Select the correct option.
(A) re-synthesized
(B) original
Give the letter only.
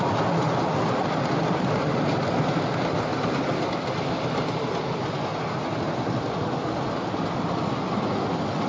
B